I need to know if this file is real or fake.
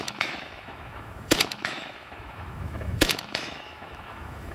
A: fake